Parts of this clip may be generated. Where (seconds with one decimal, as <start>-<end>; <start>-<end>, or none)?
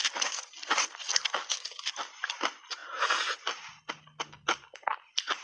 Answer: none